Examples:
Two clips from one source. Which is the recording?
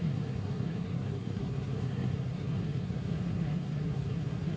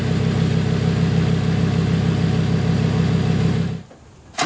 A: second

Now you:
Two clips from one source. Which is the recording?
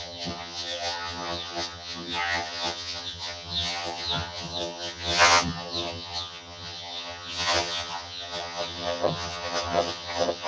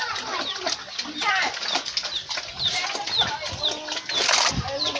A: second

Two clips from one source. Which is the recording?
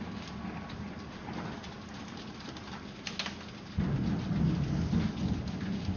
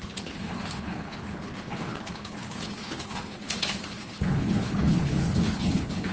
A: first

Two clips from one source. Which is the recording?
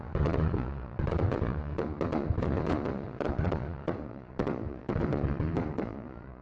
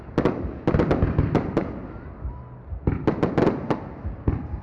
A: second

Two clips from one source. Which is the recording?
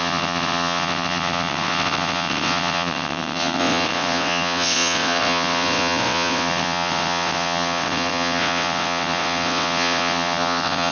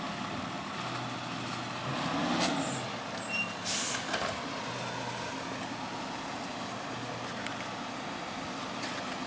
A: second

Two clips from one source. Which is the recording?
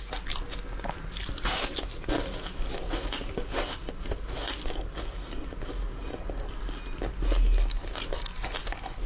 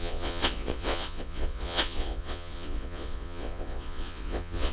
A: first